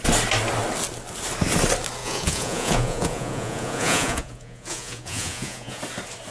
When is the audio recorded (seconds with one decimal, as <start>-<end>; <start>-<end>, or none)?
0.0-2.0; 5.8-6.3